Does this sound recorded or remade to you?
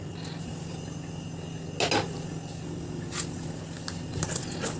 recorded